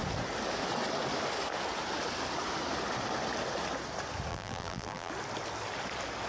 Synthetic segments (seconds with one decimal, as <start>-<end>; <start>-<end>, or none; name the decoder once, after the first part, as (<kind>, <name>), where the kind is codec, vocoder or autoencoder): 4.3-5.1 (vocoder, BigVGAN v2)